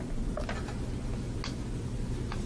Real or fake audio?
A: real